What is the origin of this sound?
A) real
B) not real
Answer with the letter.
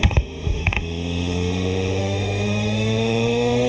B